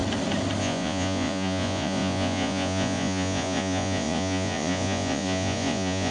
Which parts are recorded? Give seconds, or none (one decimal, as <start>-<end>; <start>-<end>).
0.0-0.6